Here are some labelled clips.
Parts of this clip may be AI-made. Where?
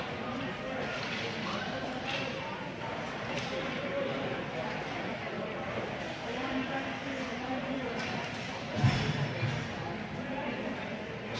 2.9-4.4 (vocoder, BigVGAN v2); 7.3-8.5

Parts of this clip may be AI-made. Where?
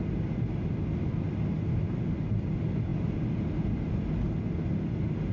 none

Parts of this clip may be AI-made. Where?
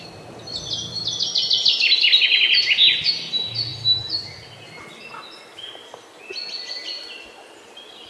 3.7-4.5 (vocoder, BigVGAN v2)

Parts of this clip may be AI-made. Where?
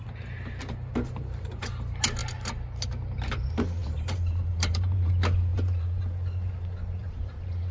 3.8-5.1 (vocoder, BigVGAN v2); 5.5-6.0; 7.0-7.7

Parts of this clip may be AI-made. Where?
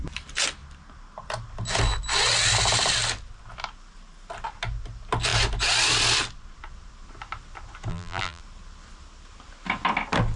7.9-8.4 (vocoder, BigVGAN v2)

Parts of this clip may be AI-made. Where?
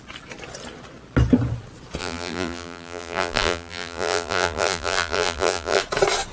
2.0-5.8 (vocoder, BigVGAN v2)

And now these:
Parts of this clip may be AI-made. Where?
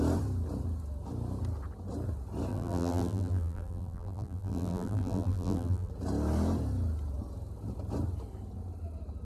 2.5-5.9 (vocoder, BigVGAN v2)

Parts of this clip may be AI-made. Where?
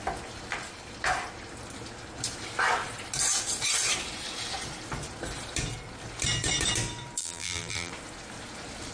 7.2-7.9 (vocoder, BigVGAN v2)